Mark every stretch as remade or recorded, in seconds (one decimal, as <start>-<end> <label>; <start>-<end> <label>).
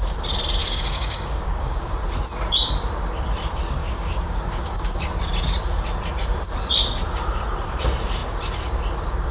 0.0-0.6 recorded; 0.6-1.9 remade; 1.9-3.8 recorded; 3.8-5.0 remade; 5.0-9.3 recorded